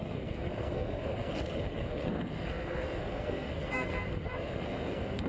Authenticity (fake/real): fake